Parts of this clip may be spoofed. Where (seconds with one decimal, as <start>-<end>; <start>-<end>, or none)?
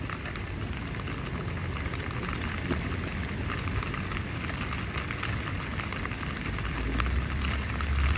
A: none